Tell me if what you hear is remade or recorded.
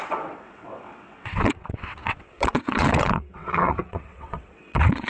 remade